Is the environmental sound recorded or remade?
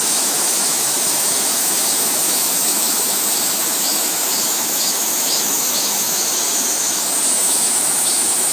remade